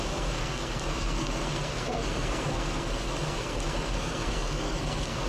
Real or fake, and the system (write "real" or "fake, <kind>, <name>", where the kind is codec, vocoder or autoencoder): fake, codec, SNAC